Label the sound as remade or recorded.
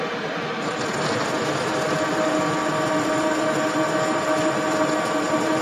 recorded